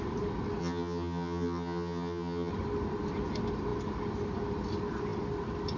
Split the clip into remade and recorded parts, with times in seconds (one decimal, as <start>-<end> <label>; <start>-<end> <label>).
0.0-0.6 recorded; 0.6-2.5 remade; 2.5-5.8 recorded